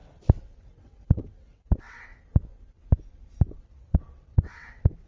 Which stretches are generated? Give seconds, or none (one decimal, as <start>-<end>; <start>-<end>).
0.0-2.1; 3.6-5.1